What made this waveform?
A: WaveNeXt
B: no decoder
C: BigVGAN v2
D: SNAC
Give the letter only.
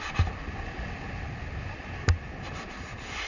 B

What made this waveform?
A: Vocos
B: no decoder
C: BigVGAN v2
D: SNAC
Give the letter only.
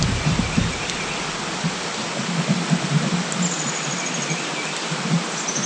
B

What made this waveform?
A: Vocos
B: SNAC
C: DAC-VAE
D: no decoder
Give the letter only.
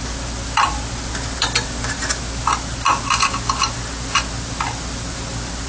D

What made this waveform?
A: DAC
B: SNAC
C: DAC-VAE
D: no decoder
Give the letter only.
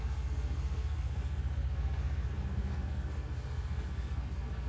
B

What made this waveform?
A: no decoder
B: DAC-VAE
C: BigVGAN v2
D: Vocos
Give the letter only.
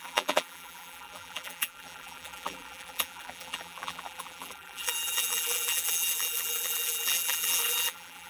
C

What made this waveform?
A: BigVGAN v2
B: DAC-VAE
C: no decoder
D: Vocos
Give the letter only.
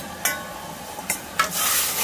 C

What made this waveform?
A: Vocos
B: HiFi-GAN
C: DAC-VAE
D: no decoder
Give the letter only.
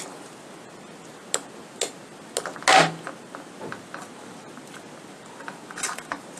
D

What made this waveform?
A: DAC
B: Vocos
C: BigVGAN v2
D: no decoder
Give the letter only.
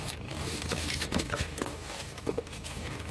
A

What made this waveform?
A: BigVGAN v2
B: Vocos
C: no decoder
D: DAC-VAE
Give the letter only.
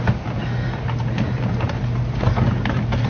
C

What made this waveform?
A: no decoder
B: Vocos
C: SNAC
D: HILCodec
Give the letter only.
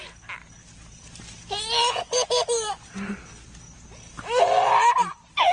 A